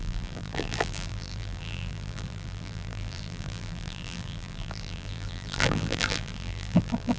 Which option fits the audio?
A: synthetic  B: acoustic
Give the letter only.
A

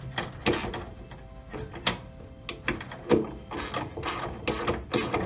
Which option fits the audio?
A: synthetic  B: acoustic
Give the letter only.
B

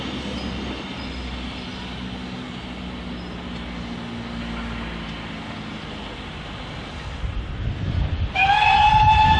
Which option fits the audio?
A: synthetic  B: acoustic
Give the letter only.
B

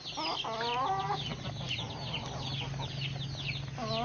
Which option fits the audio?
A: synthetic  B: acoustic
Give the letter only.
B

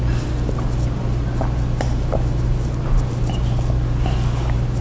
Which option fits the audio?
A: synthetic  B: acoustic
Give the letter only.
B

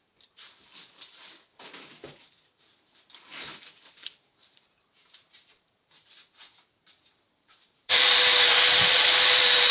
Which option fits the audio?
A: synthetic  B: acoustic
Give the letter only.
A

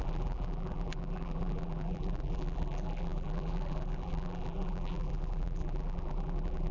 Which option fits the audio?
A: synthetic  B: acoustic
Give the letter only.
A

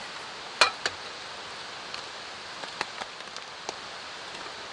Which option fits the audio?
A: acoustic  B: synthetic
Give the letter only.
A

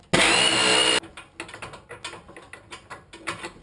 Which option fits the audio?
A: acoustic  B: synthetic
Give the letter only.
A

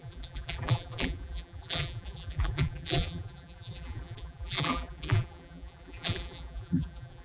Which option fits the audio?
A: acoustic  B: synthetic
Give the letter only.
B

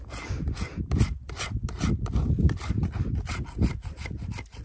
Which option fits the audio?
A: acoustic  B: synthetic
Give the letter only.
A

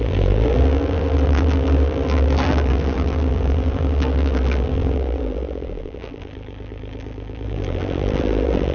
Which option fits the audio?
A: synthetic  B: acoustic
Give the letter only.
A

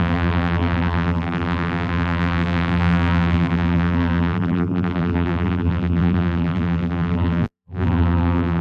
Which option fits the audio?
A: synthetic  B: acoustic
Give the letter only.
A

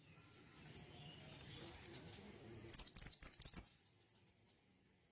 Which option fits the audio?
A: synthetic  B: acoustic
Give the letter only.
B